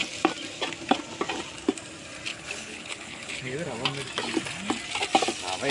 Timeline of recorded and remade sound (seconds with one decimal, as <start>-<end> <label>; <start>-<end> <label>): 0.0-2.3 recorded; 2.3-3.5 remade; 3.5-5.7 recorded

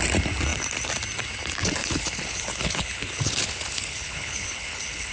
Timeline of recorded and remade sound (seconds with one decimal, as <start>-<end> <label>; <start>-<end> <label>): 0.0-1.8 recorded; 1.8-5.1 remade